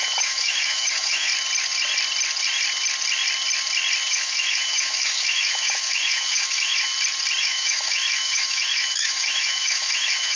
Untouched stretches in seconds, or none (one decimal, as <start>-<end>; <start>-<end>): 1.3-4.1; 6.9-7.4